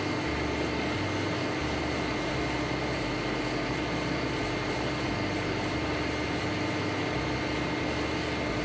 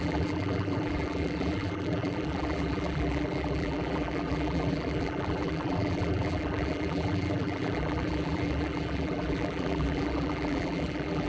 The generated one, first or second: second